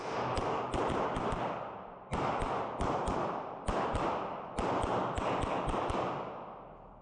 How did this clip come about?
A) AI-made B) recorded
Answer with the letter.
B